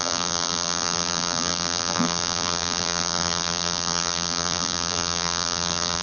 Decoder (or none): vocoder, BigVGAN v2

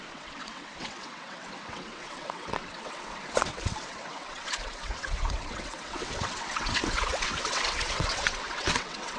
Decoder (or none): vocoder, WaveNeXt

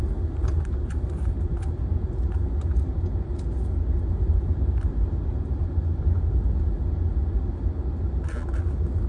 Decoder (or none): none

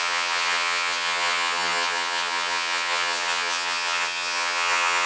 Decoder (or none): vocoder, HiFi-GAN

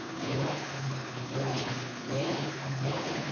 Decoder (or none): codec, HILCodec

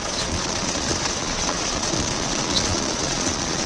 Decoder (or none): vocoder, Vocos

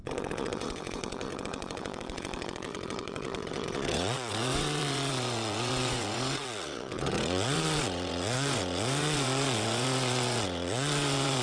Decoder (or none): vocoder, WaveNeXt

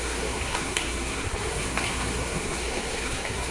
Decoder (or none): codec, SNAC